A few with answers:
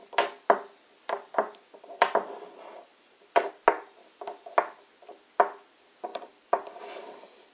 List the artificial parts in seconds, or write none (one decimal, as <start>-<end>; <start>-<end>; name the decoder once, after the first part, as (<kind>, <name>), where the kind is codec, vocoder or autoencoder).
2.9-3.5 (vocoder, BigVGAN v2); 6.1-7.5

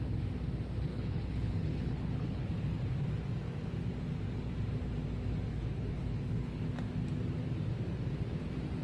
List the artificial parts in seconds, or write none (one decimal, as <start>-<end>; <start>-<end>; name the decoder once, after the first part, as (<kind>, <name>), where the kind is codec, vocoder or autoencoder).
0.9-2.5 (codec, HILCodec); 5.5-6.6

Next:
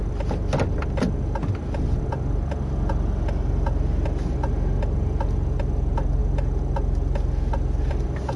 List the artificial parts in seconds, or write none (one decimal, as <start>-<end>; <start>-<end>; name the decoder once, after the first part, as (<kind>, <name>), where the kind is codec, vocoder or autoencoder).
none